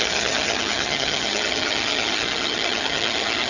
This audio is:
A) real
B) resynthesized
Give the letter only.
B